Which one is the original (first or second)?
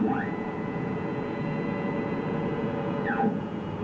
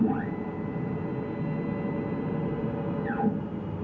second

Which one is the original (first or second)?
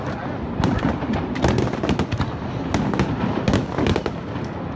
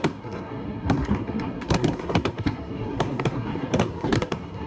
first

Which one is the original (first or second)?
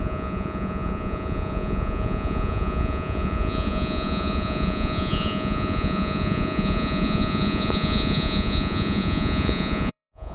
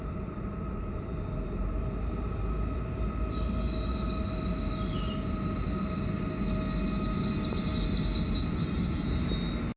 second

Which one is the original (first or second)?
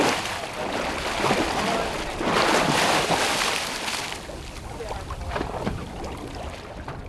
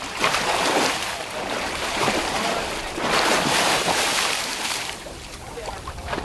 first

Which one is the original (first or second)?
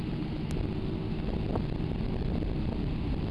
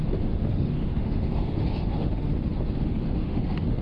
first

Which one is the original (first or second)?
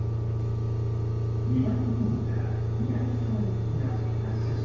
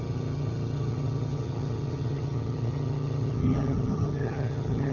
first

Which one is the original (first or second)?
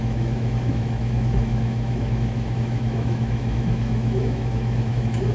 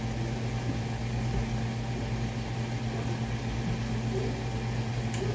second